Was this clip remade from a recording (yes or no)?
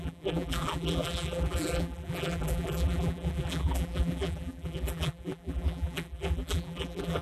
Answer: yes